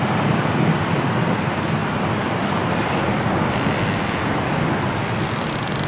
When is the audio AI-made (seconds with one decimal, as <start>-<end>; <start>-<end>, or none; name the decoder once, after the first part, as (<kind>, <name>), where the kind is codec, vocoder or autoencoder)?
none